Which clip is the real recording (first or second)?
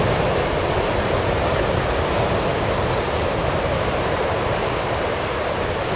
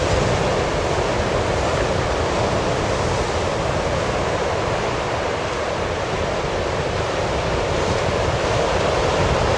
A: second